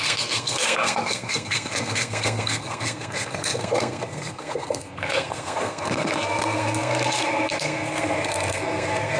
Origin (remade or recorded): remade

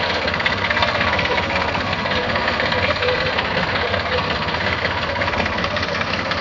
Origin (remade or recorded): remade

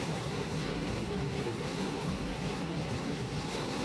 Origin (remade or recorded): remade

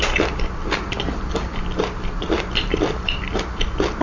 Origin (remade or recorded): recorded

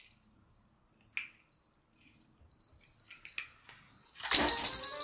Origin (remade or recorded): recorded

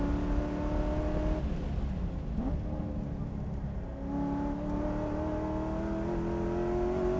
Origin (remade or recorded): recorded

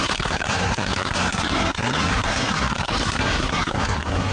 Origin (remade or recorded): remade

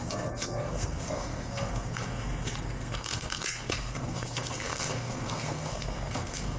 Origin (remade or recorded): remade